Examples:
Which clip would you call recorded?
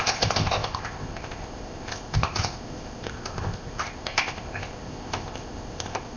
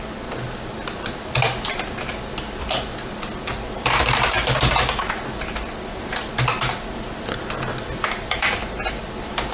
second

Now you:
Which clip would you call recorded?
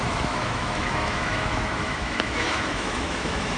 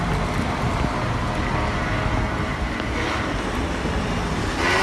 second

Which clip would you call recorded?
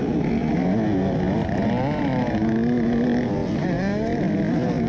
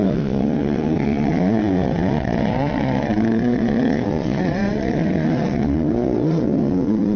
first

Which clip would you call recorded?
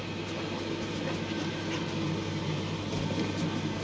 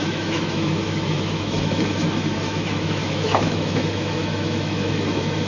first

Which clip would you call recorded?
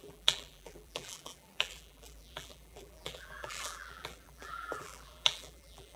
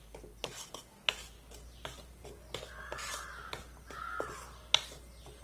second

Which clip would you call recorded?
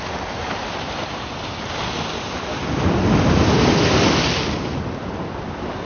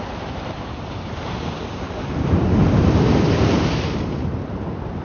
first